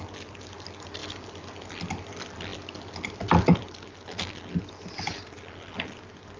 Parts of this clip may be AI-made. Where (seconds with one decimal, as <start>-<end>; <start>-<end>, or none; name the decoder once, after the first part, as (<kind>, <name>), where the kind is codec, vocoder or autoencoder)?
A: 0.0-1.0 (vocoder, BigVGAN v2); 2.0-2.5